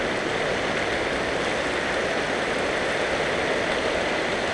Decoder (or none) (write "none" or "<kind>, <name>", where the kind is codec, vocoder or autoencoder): none